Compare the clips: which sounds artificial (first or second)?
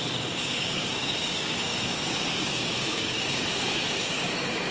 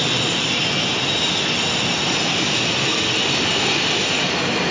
first